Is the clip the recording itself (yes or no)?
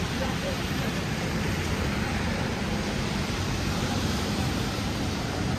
no